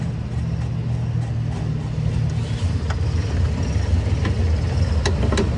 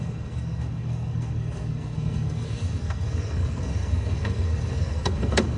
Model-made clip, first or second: second